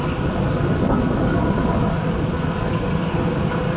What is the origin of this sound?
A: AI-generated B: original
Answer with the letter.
B